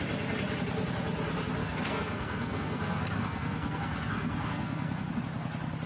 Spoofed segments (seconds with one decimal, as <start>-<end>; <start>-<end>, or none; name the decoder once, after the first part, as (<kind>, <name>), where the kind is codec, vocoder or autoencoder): 1.6-5.1 (codec, SNAC)

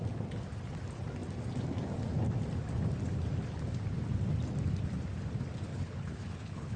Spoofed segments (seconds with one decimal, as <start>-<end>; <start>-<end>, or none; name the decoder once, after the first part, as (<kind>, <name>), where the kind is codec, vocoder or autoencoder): 5.7-6.8 (codec, HILCodec)